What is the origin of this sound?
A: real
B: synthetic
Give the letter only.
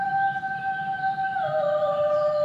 B